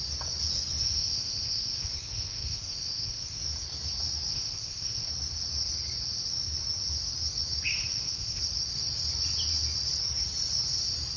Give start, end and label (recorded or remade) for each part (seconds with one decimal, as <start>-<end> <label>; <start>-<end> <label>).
0.0-0.8 recorded; 0.8-3.4 remade; 3.4-4.3 recorded; 4.3-5.1 remade; 5.1-7.7 recorded; 7.7-8.4 remade; 8.4-11.2 recorded